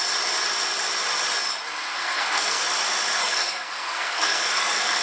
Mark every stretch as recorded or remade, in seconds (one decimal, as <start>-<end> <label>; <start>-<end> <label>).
0.0-1.9 recorded; 1.9-2.6 remade; 2.6-3.2 recorded; 3.2-5.0 remade